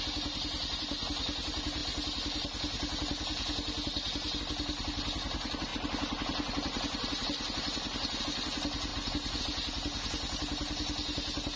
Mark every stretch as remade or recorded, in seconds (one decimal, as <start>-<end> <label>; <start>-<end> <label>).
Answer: 0.0-11.6 recorded